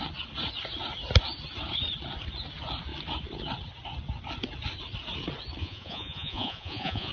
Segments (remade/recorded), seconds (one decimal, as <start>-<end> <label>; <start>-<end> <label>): 0.0-5.6 recorded; 5.6-7.1 remade